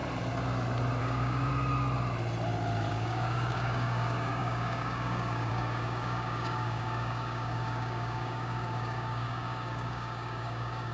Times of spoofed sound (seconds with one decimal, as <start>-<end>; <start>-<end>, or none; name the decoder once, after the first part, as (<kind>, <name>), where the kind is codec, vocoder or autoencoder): 1.0-1.5 (codec, DAC); 2.9-10.9